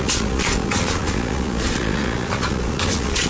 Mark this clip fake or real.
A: fake